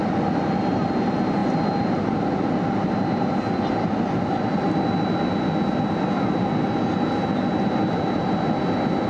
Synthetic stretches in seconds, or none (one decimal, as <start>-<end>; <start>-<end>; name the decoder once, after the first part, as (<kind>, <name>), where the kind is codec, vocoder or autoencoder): none